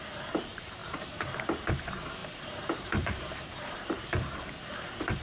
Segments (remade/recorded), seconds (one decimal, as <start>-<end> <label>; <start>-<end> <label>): 0.0-5.2 remade